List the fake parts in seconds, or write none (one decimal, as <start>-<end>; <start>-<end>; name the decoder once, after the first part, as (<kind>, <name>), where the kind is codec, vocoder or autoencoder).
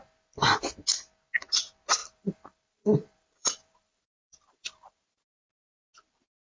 2.0-5.3 (vocoder, BigVGAN v2)